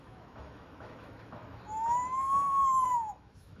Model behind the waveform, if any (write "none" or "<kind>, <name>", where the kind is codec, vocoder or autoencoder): autoencoder, DAC-VAE